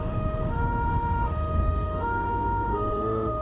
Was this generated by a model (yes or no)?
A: yes